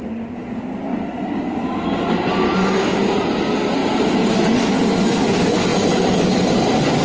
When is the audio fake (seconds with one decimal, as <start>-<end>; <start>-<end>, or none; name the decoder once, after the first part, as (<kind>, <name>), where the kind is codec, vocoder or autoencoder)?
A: none

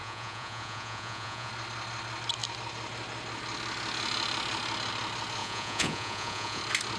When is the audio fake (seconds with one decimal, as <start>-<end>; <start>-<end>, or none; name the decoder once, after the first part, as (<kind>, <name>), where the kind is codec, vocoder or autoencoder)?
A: 0.0-1.5 (vocoder, Vocos); 5.4-6.6

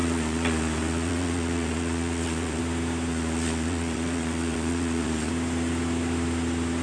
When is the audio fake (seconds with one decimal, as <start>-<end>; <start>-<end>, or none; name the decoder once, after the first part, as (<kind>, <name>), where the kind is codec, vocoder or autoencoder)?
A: 0.0-2.6 (vocoder, Vocos); 3.1-5.3

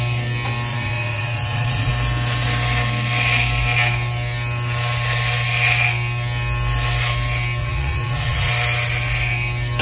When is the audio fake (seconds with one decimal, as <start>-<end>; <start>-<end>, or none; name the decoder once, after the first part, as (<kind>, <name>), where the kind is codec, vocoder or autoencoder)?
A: 0.7-1.9 (vocoder, Vocos); 7.6-8.5

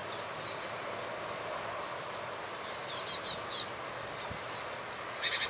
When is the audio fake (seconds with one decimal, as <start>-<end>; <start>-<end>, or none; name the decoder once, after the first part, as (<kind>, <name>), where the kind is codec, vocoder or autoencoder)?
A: none

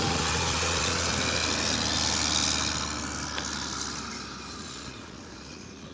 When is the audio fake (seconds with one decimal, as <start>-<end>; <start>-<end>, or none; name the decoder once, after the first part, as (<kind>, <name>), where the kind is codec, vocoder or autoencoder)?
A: 0.0-1.1 (vocoder, Vocos); 4.6-5.9

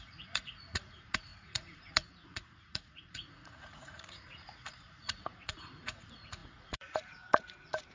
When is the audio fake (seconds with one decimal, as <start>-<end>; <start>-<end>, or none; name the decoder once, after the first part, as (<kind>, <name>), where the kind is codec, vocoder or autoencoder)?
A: 0.0-7.9 (vocoder, Vocos)